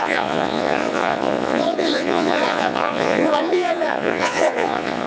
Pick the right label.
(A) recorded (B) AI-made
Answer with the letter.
B